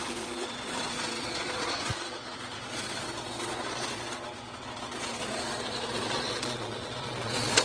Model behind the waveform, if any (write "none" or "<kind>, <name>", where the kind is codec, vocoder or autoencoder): vocoder, Vocos